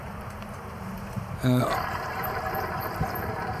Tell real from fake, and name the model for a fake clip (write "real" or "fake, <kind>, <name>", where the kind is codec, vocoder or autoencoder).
fake, vocoder, BigVGAN v2